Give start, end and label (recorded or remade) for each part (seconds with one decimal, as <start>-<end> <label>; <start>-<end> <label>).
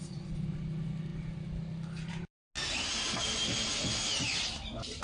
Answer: 0.0-5.0 recorded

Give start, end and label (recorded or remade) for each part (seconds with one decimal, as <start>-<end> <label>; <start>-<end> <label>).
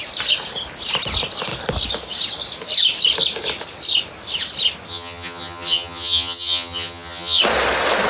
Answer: 0.0-4.9 recorded; 4.9-7.4 remade; 7.4-8.1 recorded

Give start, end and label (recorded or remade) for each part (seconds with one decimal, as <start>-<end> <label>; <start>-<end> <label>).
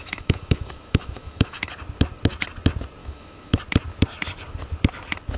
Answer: 0.0-1.7 remade; 1.7-3.0 recorded; 3.0-3.6 remade; 3.6-5.4 recorded